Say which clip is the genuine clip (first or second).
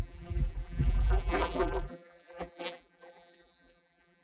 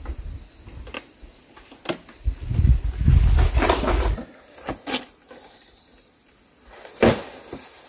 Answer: second